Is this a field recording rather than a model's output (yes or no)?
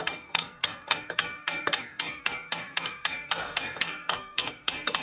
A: no